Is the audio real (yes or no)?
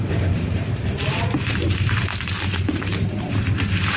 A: no